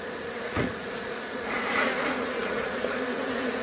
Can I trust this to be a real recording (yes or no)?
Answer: no